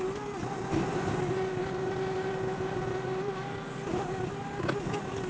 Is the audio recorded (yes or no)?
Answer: yes